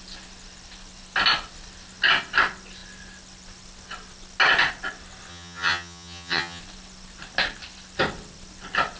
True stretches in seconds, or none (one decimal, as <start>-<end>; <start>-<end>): 0.0-5.3; 6.6-9.0